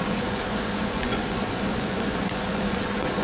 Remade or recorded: remade